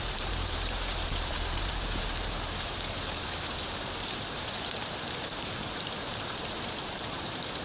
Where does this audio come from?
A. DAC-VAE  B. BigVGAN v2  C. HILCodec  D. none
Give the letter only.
B